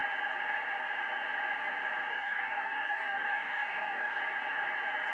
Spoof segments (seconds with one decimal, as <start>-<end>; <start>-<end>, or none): 2.1-4.2

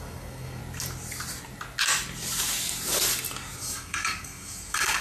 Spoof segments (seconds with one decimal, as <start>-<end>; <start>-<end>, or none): 0.0-0.6; 3.6-5.0